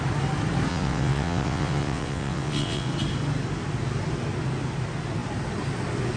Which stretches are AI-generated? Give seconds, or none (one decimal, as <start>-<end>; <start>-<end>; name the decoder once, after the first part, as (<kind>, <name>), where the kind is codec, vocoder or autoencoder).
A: 0.7-2.9 (vocoder, WaveNeXt)